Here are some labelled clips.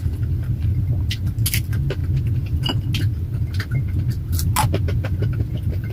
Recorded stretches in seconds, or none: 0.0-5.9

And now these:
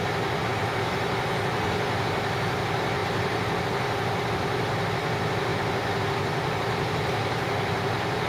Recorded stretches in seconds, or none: 0.0-0.4; 1.2-3.0; 3.6-8.3

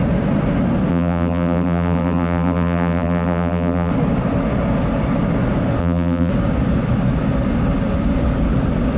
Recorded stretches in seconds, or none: 0.0-0.9; 3.9-5.8; 6.3-9.0